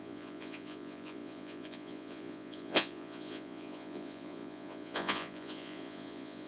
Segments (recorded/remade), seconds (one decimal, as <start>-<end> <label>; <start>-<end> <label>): 0.0-6.5 remade